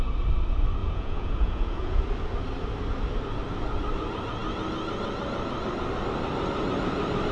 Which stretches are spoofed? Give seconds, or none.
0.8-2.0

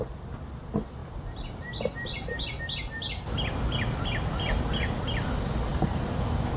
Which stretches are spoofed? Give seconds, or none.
none

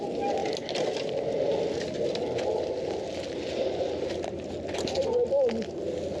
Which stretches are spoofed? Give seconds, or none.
none

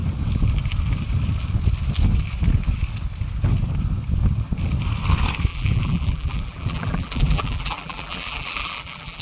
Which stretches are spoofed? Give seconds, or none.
5.5-9.2

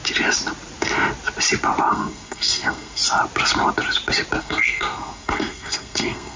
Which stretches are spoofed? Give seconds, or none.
1.9-3.0; 4.4-6.4

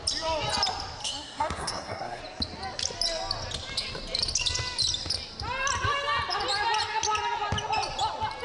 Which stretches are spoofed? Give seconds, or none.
1.0-2.2